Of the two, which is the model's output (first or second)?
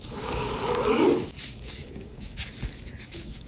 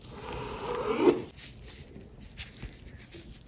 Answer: first